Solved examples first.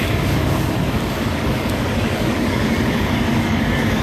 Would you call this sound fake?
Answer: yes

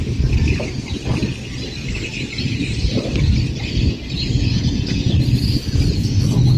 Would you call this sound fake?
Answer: no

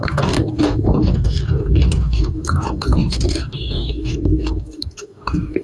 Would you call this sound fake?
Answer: yes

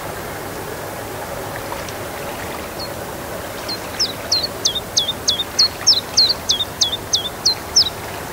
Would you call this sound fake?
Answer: no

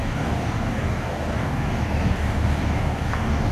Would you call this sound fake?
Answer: yes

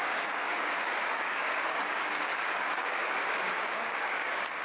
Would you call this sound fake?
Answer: yes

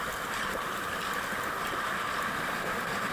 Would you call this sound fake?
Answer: no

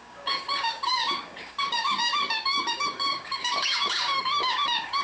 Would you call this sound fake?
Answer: yes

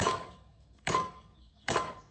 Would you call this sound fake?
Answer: yes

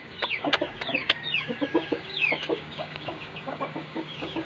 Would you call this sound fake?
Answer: yes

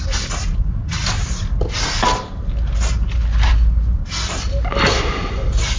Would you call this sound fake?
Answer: no